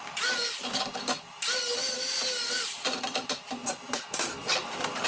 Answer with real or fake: real